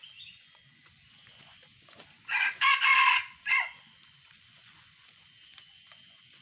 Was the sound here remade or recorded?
remade